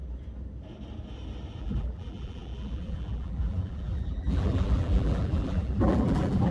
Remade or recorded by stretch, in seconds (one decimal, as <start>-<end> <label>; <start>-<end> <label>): 0.0-1.6 recorded; 1.6-6.5 remade